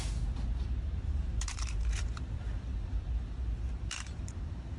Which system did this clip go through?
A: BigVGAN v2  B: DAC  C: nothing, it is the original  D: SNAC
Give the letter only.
A